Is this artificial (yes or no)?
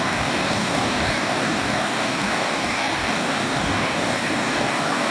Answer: yes